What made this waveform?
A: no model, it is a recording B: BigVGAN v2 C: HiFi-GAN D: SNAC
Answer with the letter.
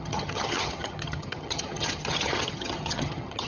C